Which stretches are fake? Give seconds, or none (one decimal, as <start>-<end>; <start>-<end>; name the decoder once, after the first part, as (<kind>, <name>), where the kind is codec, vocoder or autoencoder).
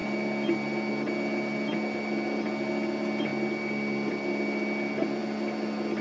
none